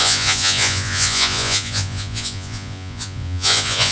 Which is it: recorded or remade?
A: remade